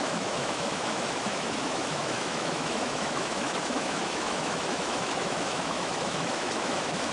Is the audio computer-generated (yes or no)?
yes